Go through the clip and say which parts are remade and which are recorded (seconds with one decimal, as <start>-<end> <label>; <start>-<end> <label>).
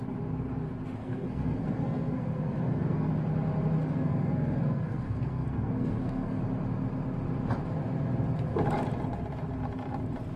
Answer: 0.0-1.0 recorded; 1.0-3.1 remade; 3.1-3.8 recorded; 3.8-6.4 remade; 6.4-10.4 recorded